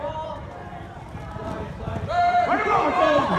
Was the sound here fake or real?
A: fake